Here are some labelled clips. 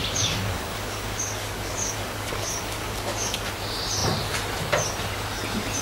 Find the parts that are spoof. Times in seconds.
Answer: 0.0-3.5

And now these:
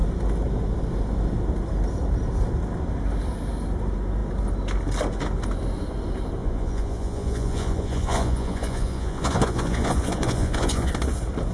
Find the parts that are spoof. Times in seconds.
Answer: 6.4-10.9

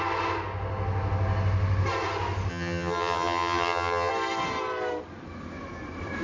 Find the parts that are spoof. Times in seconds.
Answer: 2.5-4.1

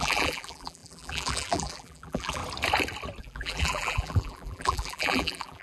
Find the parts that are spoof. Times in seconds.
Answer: 0.0-2.4; 3.2-5.6